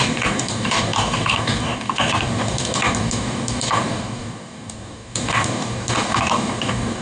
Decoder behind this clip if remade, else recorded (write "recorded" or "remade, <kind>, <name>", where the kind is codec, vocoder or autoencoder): remade, codec, DAC